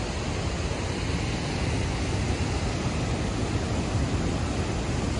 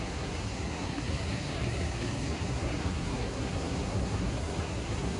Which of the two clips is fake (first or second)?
second